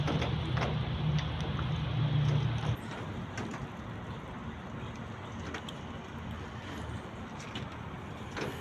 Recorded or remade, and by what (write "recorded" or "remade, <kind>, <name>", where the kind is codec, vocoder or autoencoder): recorded